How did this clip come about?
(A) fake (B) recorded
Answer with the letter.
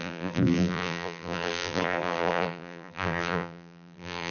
A